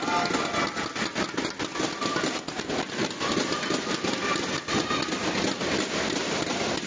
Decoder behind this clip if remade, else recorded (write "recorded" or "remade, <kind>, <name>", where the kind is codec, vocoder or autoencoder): recorded